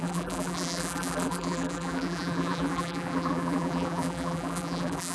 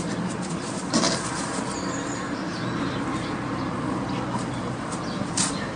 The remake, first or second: first